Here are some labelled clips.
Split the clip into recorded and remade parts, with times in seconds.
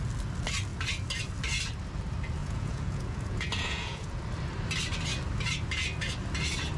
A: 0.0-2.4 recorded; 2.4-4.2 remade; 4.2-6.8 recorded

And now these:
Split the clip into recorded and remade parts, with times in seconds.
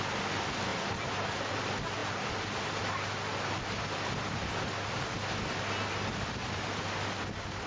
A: 0.0-7.7 recorded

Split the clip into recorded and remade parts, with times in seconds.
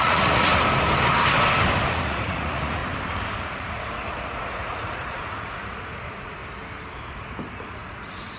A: 0.0-0.5 remade; 0.5-1.9 recorded; 1.9-2.8 remade; 2.8-3.4 recorded; 3.4-6.4 remade; 6.4-7.7 recorded; 7.7-8.4 remade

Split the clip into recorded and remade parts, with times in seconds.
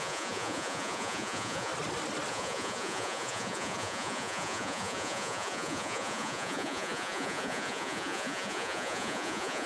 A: 0.0-1.7 remade; 1.7-2.3 recorded; 2.3-9.7 remade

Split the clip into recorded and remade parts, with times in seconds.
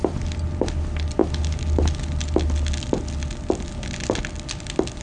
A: 0.0-5.0 recorded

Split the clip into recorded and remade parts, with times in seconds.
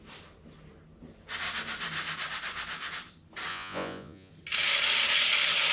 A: 0.0-3.5 recorded; 3.5-4.3 remade; 4.3-5.7 recorded